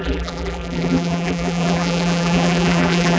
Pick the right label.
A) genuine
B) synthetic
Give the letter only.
B